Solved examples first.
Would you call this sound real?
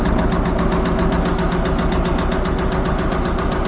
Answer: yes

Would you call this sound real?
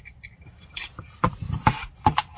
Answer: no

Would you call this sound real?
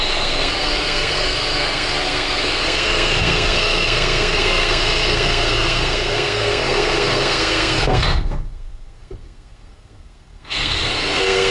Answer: no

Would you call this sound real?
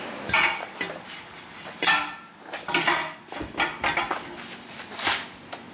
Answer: yes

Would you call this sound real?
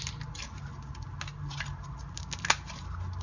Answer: yes